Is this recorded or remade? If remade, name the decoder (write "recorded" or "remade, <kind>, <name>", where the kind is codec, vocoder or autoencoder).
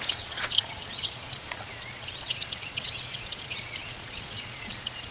remade, vocoder, Vocos